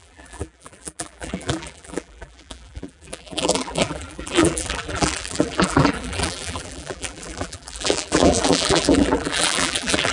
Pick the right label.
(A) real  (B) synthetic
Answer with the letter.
B